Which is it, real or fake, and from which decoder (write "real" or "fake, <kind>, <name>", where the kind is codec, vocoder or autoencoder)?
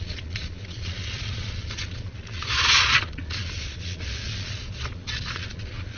fake, vocoder, Vocos